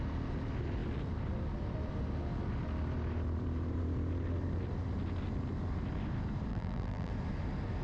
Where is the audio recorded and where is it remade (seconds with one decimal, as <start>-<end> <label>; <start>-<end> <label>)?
0.0-6.5 recorded; 6.5-7.1 remade; 7.1-7.8 recorded